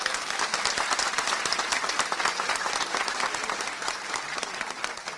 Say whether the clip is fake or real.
real